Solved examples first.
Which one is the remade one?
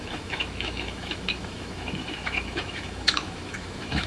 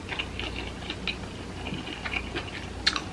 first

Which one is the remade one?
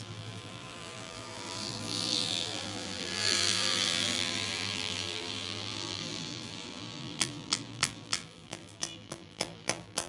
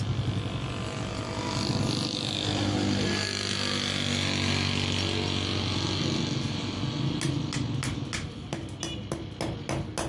first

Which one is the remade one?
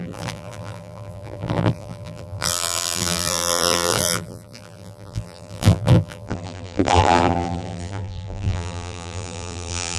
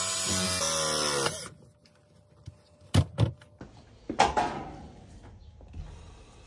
first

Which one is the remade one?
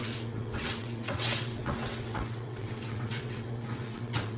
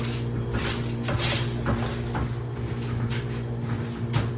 first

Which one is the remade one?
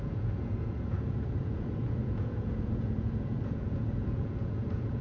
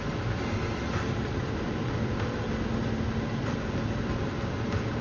first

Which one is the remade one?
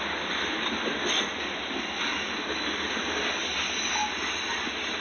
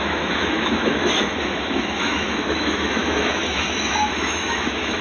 second